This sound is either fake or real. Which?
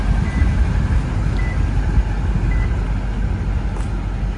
real